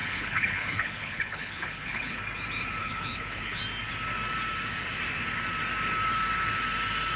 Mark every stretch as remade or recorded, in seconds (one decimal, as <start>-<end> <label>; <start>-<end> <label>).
0.0-2.2 remade; 2.2-2.8 recorded; 2.8-3.6 remade; 3.6-7.2 recorded